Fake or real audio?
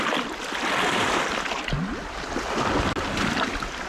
real